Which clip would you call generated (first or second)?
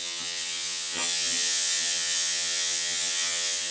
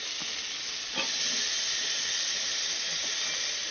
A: first